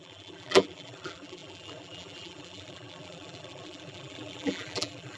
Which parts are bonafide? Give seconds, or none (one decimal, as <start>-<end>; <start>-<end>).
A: none

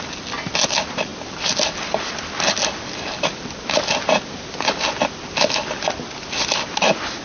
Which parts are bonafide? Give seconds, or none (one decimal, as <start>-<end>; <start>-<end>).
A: 0.0-7.2

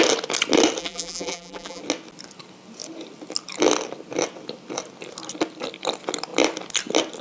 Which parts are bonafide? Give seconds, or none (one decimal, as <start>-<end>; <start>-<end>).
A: 0.0-0.8; 1.8-7.2

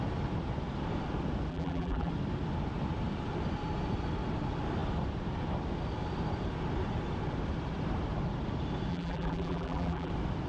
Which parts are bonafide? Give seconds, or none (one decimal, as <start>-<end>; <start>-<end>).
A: 0.0-1.5; 2.1-8.9; 10.1-10.5

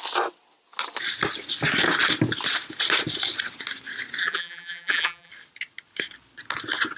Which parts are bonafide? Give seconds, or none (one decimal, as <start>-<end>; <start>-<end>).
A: 0.0-4.2; 5.3-7.0

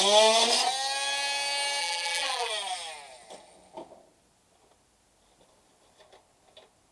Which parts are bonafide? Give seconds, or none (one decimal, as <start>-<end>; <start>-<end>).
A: 0.0-1.8; 2.5-6.9

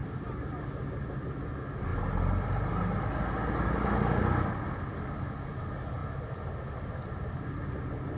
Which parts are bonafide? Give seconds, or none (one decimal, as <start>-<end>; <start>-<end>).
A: 1.3-8.2

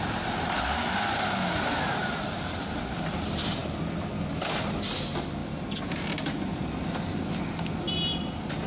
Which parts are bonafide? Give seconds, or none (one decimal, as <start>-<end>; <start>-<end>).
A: 0.0-8.7